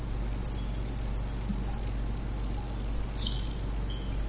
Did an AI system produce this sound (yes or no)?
no